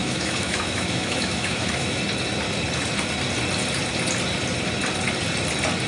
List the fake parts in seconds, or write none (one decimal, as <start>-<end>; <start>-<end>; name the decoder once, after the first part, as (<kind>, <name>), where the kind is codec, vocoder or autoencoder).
0.0-2.0 (autoencoder, DAC-VAE)